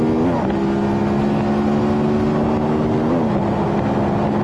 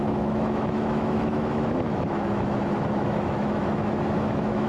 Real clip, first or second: first